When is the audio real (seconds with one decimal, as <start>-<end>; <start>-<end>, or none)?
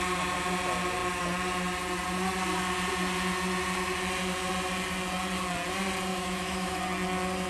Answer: 0.0-6.1; 6.8-7.5